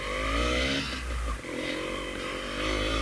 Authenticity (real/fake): real